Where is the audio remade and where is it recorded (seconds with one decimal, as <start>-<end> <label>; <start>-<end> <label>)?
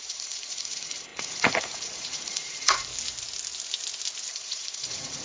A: 0.0-2.9 remade; 2.9-4.3 recorded; 4.3-5.2 remade